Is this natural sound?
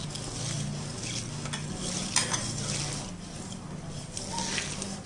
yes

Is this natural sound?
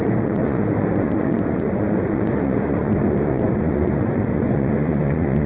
no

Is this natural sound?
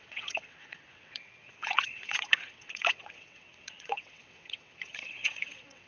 no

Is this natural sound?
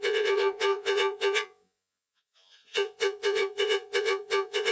no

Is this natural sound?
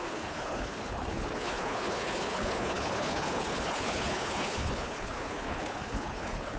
no